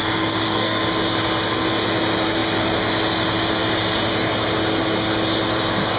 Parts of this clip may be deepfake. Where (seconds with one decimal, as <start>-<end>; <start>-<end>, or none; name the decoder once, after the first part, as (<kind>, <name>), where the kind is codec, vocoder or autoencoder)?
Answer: 0.0-0.8 (codec, SNAC)